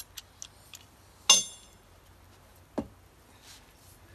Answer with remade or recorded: recorded